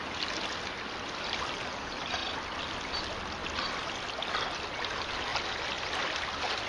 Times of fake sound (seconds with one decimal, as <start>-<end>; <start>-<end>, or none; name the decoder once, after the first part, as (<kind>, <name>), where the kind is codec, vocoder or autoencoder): none